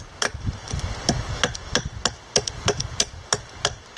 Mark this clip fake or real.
real